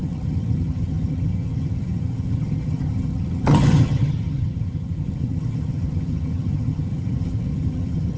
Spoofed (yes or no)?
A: yes